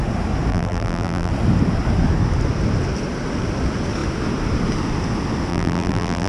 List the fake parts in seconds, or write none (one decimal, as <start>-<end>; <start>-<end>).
0.5-1.3; 5.5-6.3